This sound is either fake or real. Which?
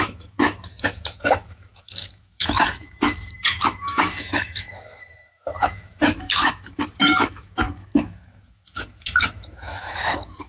fake